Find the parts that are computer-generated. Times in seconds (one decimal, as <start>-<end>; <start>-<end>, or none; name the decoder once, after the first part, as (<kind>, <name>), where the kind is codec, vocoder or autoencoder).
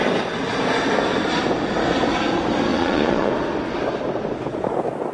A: 2.7-3.3 (vocoder, Vocos)